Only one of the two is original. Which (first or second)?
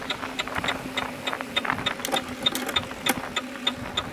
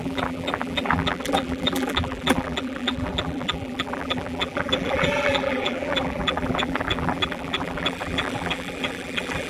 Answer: first